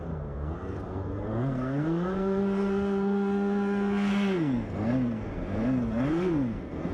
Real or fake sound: fake